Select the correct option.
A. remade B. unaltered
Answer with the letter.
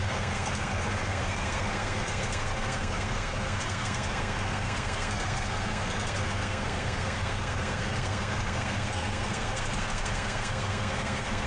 A